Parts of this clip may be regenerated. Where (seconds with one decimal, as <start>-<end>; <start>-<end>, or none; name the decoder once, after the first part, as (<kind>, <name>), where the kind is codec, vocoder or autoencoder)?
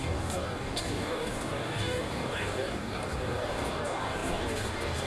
0.0-5.1 (codec, DAC)